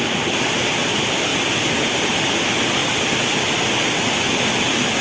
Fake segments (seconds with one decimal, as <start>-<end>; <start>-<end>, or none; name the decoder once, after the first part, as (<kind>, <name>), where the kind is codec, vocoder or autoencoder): none